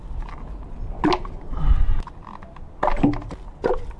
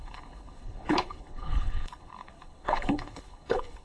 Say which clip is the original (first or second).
first